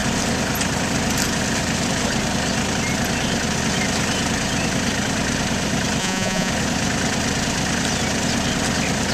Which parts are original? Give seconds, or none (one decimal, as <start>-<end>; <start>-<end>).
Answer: 0.0-6.0; 6.5-9.1